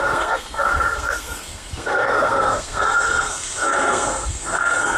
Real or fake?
fake